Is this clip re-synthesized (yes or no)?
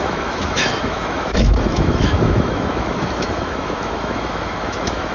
yes